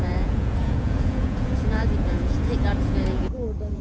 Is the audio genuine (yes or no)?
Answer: no